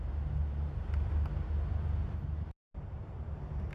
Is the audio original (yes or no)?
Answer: yes